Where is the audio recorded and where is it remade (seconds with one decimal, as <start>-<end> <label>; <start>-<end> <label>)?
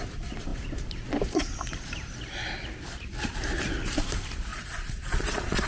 0.0-4.5 recorded; 4.5-5.7 remade